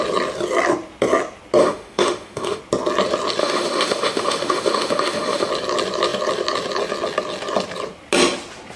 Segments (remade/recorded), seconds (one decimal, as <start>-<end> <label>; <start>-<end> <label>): 0.0-1.6 recorded; 1.6-2.6 remade; 2.6-3.4 recorded; 3.4-5.5 remade; 5.5-8.8 recorded